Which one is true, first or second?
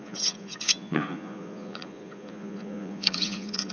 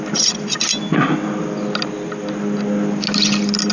second